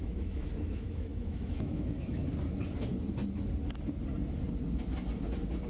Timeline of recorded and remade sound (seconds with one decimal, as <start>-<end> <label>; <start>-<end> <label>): 0.0-2.2 remade; 2.2-5.7 recorded